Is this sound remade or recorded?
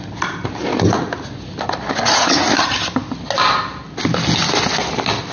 recorded